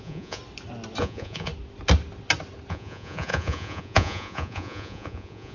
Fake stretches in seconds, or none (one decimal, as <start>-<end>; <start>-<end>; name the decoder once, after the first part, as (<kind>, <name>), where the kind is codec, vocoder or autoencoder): 0.0-0.4 (vocoder, Vocos); 1.0-1.5; 2.7-5.5